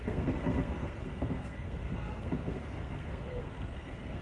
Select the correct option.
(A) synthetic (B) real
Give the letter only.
A